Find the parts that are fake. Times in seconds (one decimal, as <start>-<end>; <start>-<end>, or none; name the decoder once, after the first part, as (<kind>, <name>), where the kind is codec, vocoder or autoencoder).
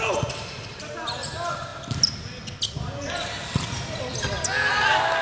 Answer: none